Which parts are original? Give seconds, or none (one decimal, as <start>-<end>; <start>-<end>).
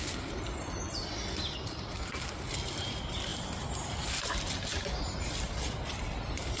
0.0-6.6